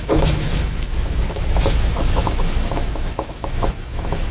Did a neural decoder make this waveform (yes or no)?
yes